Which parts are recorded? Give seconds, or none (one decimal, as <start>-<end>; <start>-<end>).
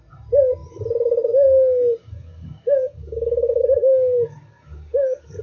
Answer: 0.0-2.0